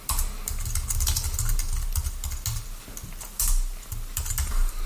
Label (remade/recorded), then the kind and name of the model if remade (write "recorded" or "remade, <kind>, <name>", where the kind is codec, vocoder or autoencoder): recorded